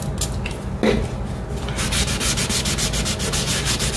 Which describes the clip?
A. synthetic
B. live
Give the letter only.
B